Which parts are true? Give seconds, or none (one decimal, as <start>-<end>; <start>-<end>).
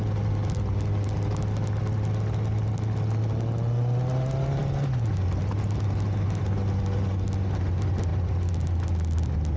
0.0-9.6